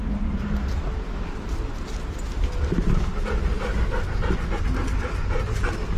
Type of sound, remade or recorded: recorded